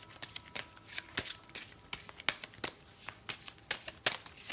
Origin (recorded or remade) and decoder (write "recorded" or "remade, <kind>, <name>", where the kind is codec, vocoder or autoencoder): recorded